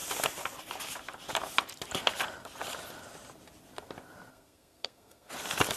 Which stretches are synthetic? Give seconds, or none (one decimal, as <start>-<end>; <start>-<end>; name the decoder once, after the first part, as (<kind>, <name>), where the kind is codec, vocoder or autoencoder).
4.3-5.3 (codec, SNAC)